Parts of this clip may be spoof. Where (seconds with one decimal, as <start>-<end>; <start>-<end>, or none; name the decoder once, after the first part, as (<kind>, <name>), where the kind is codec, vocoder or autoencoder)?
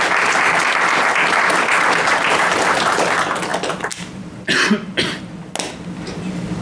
none